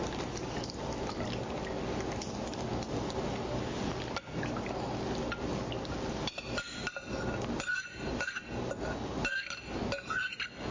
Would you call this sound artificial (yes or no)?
no